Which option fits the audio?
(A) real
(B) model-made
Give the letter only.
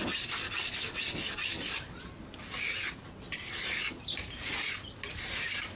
A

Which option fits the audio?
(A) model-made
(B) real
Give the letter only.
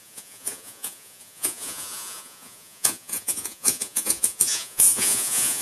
A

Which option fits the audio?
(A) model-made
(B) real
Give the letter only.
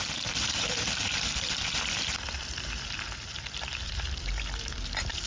A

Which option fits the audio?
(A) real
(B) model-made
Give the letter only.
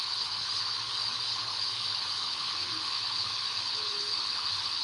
B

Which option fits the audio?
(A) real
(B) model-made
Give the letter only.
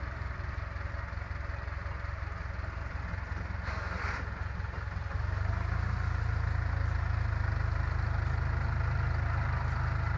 A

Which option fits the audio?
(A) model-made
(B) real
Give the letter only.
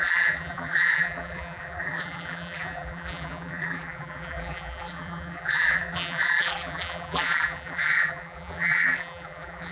A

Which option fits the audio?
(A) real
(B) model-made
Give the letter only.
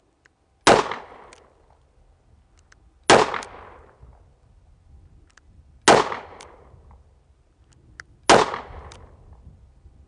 A